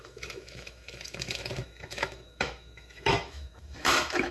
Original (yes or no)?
no